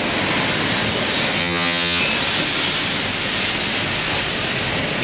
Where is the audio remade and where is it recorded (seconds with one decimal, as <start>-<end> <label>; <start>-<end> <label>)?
0.0-1.4 recorded; 1.4-2.0 remade; 2.0-5.0 recorded

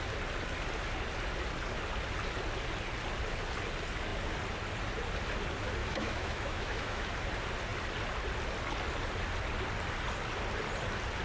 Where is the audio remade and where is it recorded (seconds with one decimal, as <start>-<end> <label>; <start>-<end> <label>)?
0.0-5.8 recorded; 5.8-7.1 remade; 7.1-11.2 recorded

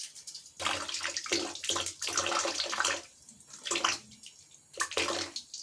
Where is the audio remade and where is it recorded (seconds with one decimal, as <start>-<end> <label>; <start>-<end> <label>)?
0.0-5.6 recorded

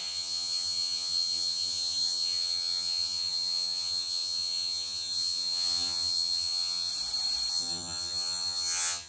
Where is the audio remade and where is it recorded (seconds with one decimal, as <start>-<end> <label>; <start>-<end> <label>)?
0.0-6.9 remade; 6.9-7.5 recorded; 7.5-9.1 remade

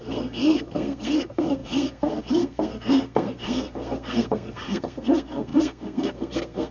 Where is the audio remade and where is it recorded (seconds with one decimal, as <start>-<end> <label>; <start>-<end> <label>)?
0.0-6.7 remade